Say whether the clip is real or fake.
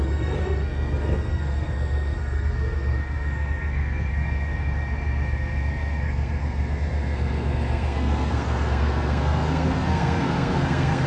fake